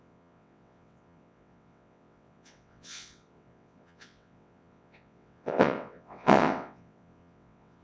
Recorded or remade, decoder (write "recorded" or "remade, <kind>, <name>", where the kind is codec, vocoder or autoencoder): remade, vocoder, WaveNeXt